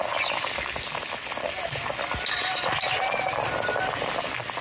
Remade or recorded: recorded